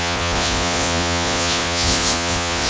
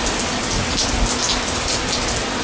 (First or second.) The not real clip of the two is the first